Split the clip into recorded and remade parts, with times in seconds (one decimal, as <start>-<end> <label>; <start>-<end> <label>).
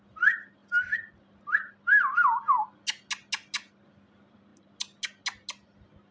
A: 0.0-6.1 recorded